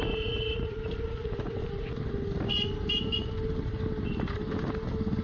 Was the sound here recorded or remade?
recorded